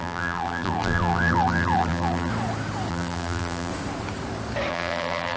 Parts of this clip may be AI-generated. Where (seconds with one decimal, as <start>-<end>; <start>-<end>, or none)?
0.0-2.3; 2.9-3.7; 4.7-5.4